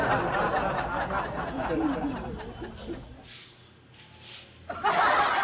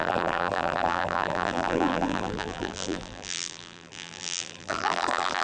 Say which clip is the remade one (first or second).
second